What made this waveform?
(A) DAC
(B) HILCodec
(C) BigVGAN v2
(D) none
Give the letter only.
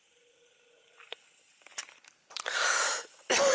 C